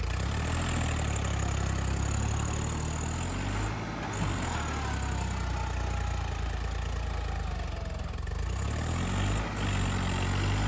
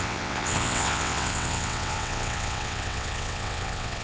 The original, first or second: first